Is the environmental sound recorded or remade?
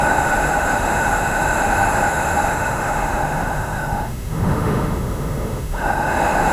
remade